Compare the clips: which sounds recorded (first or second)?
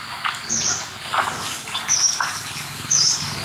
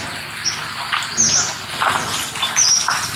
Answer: second